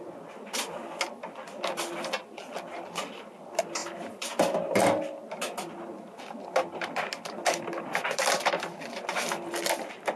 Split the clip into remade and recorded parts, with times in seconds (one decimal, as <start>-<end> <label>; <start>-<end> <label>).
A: 0.0-10.2 recorded